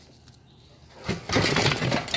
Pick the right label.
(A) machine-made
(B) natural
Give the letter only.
B